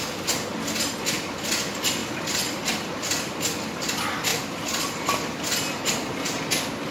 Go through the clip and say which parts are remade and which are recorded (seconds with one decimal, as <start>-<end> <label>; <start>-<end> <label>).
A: 0.0-2.0 recorded; 2.0-3.0 remade; 3.0-4.3 recorded; 4.3-5.4 remade; 5.4-6.9 recorded